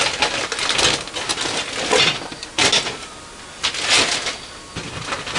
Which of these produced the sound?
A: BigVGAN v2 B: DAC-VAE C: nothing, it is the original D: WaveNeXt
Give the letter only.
C